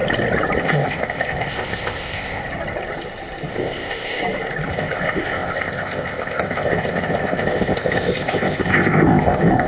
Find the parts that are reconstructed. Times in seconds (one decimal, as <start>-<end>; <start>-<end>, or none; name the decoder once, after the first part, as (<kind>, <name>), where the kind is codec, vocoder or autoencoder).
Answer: 0.6-2.4 (codec, ZipCodec); 3.5-4.2; 4.7-9.7